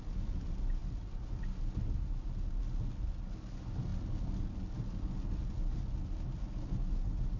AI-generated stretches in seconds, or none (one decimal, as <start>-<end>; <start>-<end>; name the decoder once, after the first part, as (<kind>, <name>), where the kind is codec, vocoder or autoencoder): none